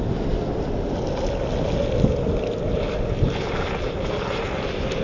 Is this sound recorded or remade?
recorded